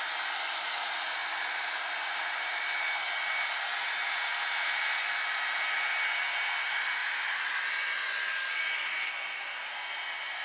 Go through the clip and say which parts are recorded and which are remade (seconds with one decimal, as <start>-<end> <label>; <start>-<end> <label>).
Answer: 0.0-7.0 recorded; 7.0-9.1 remade; 9.1-10.4 recorded